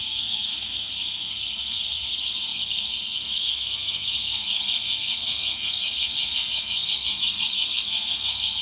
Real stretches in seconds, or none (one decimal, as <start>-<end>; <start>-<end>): none